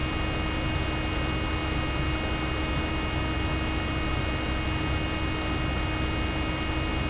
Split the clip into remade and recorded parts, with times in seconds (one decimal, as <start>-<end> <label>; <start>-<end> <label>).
0.0-7.1 recorded